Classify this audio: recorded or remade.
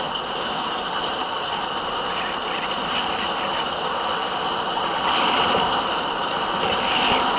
remade